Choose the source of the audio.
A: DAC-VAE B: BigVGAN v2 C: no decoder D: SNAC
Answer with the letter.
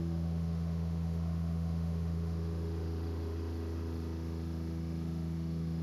A